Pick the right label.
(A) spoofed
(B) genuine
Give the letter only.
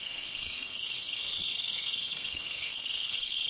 A